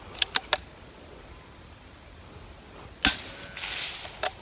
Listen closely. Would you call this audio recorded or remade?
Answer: recorded